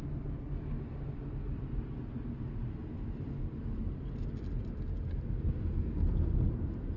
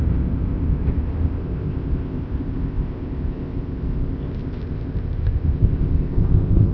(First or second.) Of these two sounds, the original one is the first